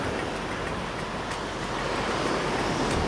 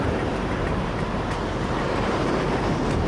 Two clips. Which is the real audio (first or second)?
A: first